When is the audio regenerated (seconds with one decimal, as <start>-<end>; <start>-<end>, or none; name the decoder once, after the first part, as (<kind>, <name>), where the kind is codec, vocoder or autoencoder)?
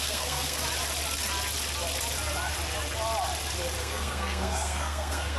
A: 0.0-0.6 (codec, SNAC); 3.8-5.4